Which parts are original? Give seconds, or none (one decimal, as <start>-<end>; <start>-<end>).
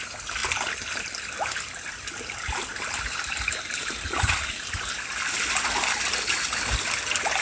0.0-7.4